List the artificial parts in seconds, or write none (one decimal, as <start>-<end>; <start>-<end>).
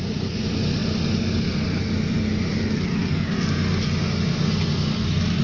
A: none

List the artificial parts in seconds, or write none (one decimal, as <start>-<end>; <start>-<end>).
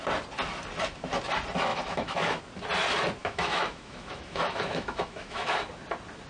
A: 1.7-2.4; 3.2-5.6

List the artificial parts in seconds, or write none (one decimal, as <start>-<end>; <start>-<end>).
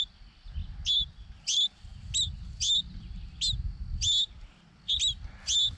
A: none